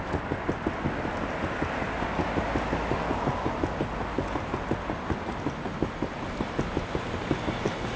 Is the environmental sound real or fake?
real